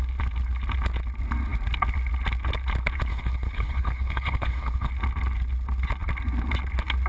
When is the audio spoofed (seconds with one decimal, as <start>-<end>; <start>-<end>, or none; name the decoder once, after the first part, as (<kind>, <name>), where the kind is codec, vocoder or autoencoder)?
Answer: 3.1-4.9 (codec, HILCodec)